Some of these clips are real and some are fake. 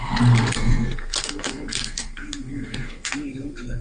fake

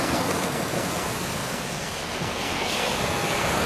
fake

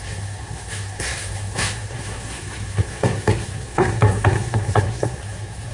fake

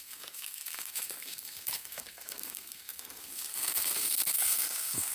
fake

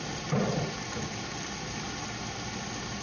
real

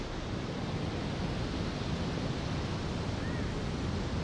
real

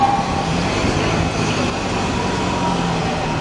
real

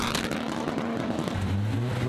real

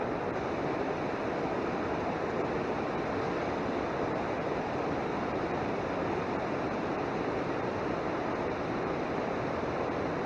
real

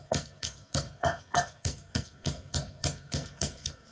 fake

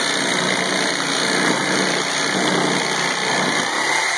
real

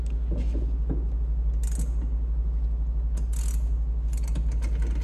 real